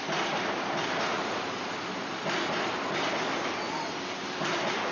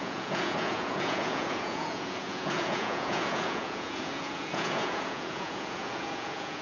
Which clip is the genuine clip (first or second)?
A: first